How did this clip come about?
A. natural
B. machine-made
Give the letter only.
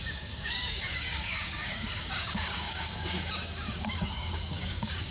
B